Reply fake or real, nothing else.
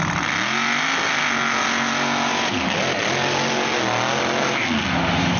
real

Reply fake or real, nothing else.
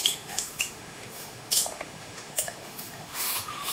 fake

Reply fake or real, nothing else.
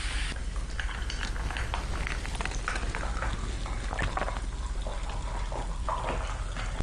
real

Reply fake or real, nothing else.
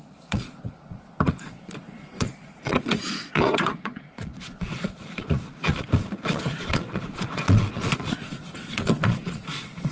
fake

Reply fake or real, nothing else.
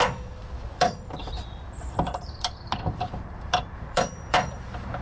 fake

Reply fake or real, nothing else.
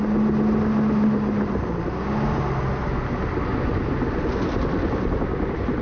real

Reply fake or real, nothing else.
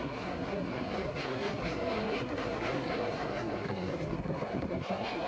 fake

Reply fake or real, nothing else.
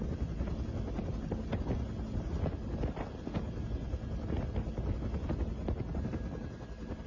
real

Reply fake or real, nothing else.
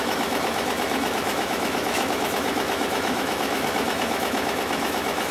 fake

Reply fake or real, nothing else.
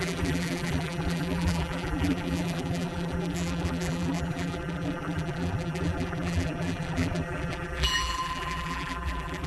fake